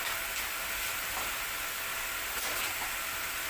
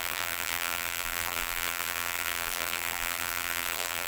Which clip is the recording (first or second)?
first